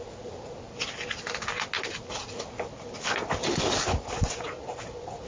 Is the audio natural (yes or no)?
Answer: yes